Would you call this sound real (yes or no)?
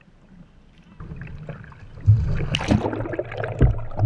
yes